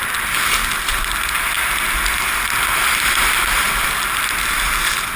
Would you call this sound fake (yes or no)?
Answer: no